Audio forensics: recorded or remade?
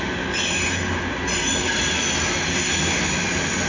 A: recorded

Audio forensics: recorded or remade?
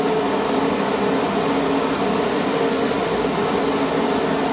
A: recorded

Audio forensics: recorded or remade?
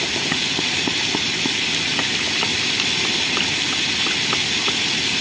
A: recorded